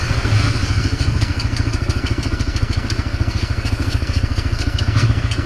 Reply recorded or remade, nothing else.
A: remade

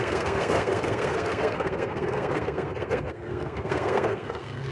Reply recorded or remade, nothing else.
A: remade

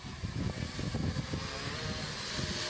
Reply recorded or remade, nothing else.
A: recorded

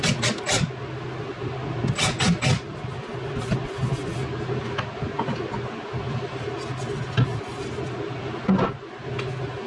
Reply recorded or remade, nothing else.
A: recorded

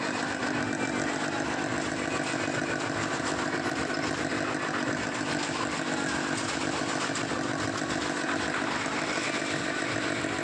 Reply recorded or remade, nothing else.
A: recorded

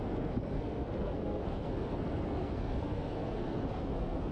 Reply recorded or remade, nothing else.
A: remade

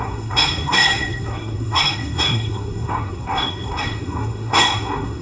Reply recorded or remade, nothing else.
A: remade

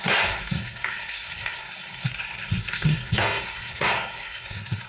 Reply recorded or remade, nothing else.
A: remade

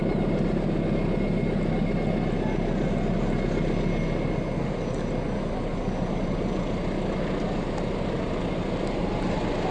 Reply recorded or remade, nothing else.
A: recorded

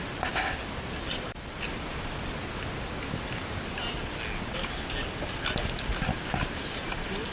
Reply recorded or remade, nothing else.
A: recorded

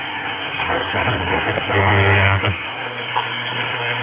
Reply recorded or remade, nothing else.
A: remade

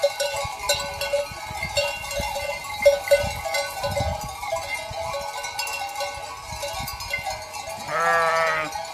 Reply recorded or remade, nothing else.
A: recorded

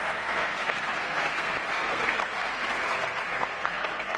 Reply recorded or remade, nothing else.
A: remade